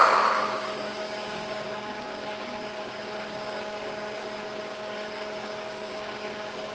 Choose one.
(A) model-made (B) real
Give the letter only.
A